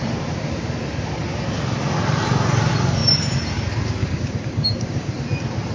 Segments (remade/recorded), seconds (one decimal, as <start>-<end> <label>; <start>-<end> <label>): 0.0-4.0 recorded; 4.0-5.1 remade; 5.1-5.7 recorded